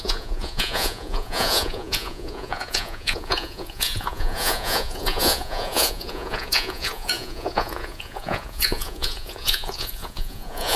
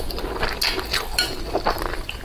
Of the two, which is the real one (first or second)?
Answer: second